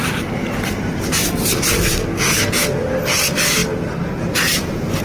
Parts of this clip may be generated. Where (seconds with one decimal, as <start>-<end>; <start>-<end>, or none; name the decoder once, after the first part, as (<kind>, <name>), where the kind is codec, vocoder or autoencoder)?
none

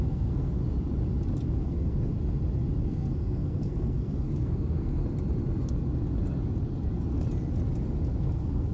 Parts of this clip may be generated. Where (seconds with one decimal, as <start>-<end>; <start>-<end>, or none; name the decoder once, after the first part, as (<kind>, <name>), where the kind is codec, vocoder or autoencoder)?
0.0-0.6 (codec, SNAC); 1.6-2.1; 2.8-5.0; 8.2-8.7